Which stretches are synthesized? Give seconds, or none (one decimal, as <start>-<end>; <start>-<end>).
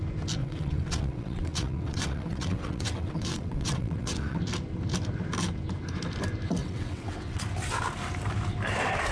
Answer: 0.4-4.4; 6.6-7.4